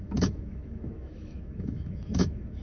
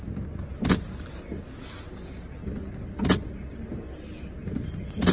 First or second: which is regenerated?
first